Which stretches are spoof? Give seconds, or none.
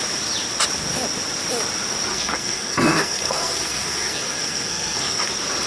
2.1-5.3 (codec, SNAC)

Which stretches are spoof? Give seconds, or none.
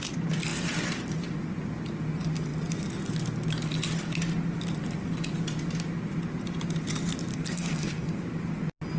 7.3-8.2 (codec, SNAC)